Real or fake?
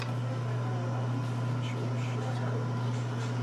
real